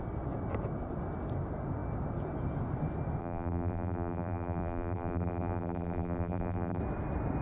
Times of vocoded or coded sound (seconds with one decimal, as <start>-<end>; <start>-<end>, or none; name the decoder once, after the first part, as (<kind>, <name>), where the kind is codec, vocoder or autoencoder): 3.2-6.8 (vocoder, BigVGAN v2)